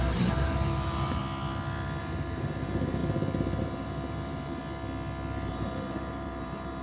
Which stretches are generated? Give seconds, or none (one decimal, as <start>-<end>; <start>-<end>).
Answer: 0.0-1.2; 2.0-3.0; 3.6-4.6; 5.5-6.8